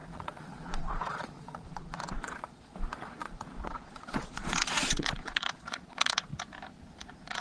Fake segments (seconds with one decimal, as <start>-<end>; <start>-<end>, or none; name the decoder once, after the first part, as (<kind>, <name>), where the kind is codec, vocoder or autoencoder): 0.0-6.3 (vocoder, Vocos); 7.0-7.4